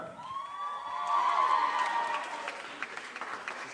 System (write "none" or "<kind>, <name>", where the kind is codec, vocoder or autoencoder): none